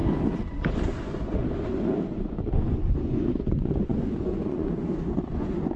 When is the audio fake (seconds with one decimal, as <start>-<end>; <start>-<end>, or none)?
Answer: 1.0-1.4; 2.1-5.8